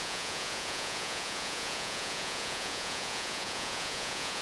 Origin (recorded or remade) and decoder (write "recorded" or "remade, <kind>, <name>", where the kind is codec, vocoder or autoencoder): remade, vocoder, Vocos